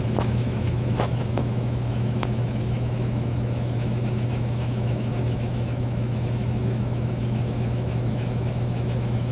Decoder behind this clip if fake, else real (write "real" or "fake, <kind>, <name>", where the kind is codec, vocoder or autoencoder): fake, autoencoder, DAC-VAE